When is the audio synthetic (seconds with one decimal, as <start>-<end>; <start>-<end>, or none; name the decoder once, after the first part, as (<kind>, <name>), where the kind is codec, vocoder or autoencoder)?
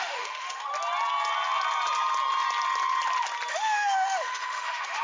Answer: 0.0-0.7 (autoencoder, DAC-VAE); 3.5-5.0